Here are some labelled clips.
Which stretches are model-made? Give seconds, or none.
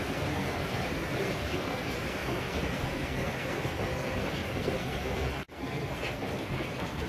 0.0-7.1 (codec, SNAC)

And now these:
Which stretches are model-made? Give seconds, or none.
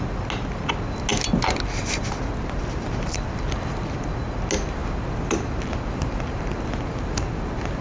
none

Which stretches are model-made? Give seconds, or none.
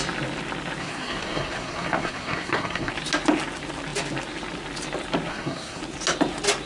0.8-2.9 (codec, SNAC); 5.3-5.8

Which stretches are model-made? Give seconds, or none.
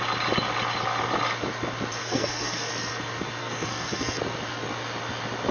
2.0-2.7 (codec, SNAC); 3.4-4.2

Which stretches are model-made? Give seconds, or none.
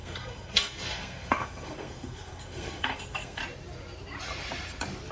0.0-3.4 (codec, SNAC)